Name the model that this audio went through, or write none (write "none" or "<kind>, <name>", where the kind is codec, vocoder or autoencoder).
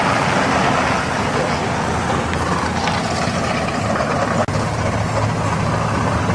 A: none